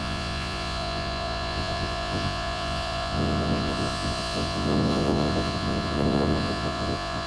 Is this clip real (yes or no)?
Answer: no